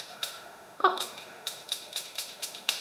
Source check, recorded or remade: remade